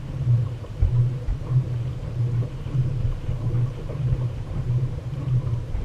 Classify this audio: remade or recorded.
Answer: remade